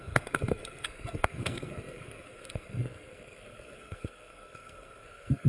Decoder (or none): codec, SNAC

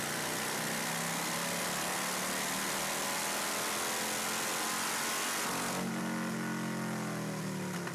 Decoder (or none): none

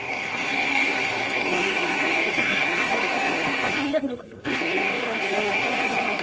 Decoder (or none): codec, SNAC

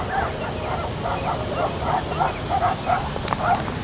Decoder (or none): none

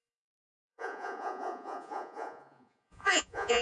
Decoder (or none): vocoder, Vocos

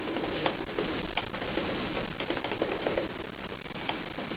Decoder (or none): none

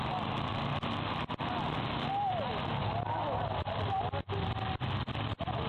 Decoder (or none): none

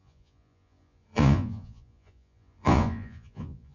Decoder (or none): vocoder, Vocos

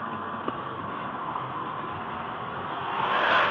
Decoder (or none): codec, SNAC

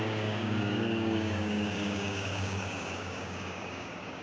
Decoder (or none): codec, DAC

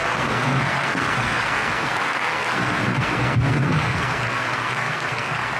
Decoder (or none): codec, SNAC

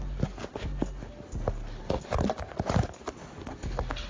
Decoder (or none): none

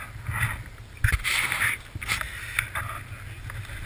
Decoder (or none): none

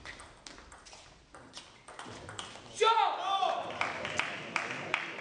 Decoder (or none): none